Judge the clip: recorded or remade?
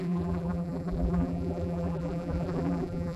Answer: remade